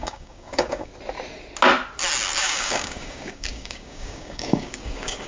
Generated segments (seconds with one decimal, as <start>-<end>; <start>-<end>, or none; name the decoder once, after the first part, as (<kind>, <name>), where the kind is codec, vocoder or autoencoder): 0.0-0.9 (codec, DAC); 2.4-5.3